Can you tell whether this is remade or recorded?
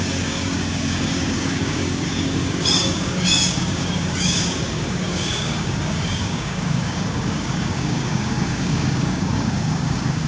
remade